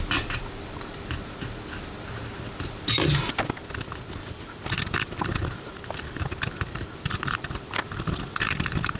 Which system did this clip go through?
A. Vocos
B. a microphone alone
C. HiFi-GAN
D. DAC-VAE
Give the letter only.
B